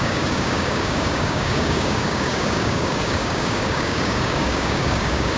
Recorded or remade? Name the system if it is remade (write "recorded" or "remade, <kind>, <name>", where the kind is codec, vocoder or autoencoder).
remade, codec, DAC